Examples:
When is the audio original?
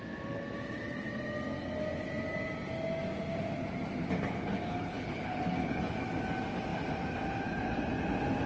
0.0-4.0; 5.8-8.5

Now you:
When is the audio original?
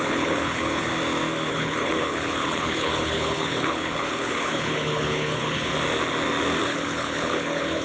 0.9-1.5; 5.7-6.6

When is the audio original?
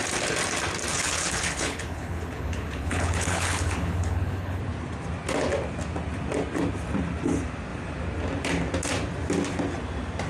0.0-0.9; 4.6-10.3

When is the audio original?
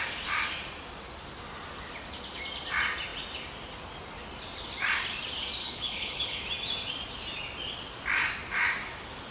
0.0-5.6; 6.4-9.3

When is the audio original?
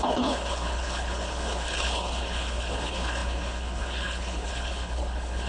none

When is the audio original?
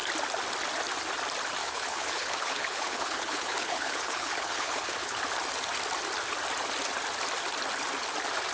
0.0-1.6; 5.2-8.5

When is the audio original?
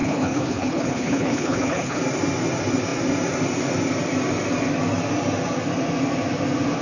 2.0-6.8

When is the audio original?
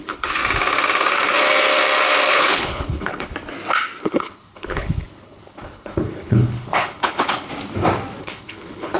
0.4-2.3; 3.3-4.0; 7.5-8.2